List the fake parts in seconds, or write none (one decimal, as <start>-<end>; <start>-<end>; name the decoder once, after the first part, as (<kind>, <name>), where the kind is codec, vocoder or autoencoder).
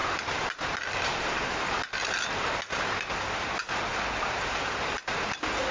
none